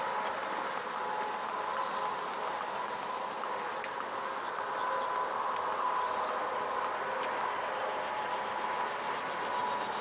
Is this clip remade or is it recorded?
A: recorded